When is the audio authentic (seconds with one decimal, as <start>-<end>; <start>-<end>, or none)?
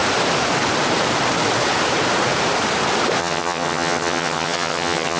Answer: 0.0-3.2